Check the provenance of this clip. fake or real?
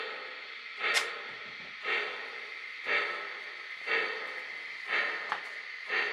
real